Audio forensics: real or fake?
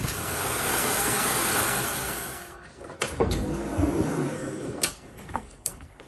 fake